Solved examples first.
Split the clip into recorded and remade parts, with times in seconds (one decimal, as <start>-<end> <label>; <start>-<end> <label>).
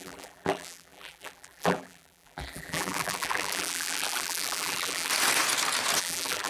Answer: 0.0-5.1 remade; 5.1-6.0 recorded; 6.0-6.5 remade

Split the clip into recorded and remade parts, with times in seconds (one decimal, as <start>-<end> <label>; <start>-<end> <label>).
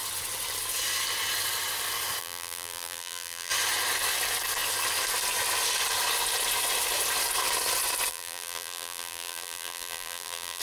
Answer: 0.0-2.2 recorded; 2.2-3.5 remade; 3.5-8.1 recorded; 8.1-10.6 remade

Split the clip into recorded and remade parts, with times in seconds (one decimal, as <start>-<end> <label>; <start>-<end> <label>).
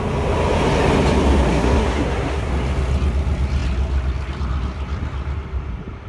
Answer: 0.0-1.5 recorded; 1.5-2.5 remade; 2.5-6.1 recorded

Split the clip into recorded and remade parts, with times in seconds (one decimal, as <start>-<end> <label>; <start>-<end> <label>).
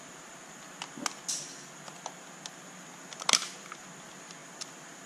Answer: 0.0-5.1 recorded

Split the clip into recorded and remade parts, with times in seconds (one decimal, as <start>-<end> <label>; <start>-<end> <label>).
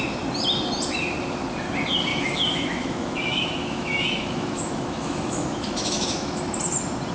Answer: 0.0-2.1 recorded; 2.1-6.4 remade; 6.4-7.1 recorded